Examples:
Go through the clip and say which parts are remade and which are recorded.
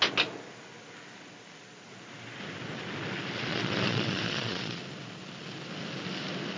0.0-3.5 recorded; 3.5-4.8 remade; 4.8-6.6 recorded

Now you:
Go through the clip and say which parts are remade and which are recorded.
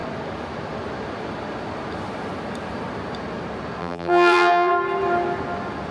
0.0-3.8 recorded; 3.8-4.7 remade; 4.7-5.9 recorded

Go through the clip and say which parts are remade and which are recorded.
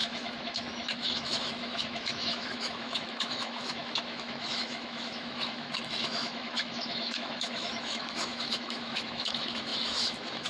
0.0-10.5 remade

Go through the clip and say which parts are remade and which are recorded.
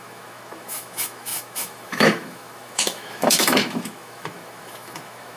0.0-5.4 remade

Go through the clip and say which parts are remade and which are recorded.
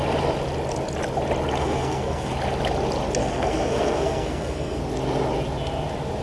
0.0-1.6 recorded; 1.6-2.3 remade; 2.3-3.2 recorded; 3.2-4.8 remade; 4.8-6.2 recorded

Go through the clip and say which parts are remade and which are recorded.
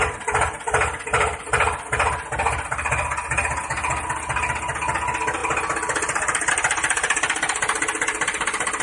0.0-8.8 recorded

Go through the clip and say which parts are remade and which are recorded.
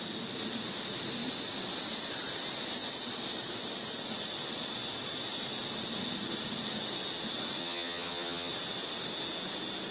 0.0-7.6 recorded; 7.6-8.5 remade; 8.5-9.9 recorded